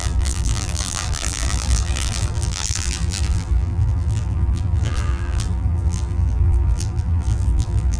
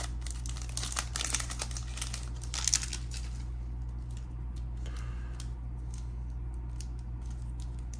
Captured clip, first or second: second